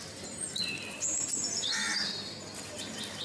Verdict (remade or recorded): recorded